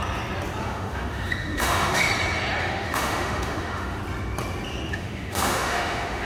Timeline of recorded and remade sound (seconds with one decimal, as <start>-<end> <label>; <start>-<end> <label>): 0.0-0.6 recorded; 0.6-2.1 remade; 2.1-2.6 recorded; 2.6-4.0 remade; 4.0-4.9 recorded; 4.9-6.2 remade